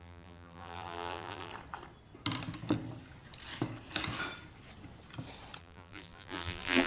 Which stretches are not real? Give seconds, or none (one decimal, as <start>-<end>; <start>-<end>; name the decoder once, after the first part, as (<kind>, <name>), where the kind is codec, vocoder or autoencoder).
0.0-1.5 (vocoder, BigVGAN v2); 5.6-6.9